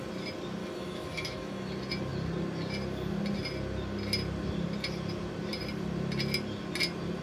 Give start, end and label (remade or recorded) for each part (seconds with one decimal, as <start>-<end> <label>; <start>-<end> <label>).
0.0-0.6 recorded; 0.6-1.7 remade; 1.7-7.2 recorded